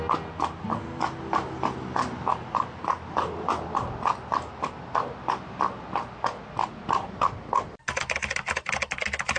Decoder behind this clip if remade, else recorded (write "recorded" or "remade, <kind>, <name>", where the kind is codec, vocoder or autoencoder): recorded